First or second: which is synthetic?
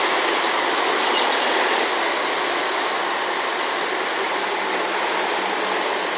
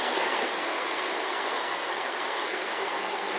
second